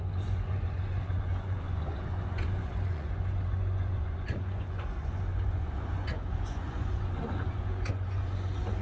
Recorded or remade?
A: remade